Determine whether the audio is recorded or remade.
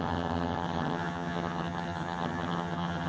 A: remade